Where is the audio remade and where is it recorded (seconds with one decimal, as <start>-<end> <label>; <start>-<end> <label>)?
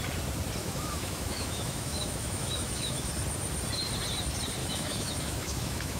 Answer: 0.0-0.6 recorded; 0.6-3.1 remade; 3.1-4.6 recorded; 4.6-6.0 remade